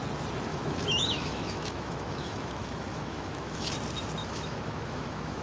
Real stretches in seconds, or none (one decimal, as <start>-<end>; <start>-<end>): 0.0-0.5; 3.7-4.2